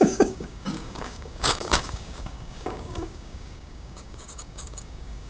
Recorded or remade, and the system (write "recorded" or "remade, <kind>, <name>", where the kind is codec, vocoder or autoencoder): remade, codec, DAC